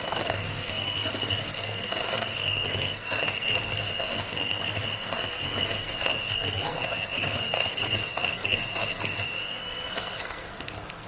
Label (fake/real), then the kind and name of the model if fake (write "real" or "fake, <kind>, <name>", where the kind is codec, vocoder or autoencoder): fake, codec, SNAC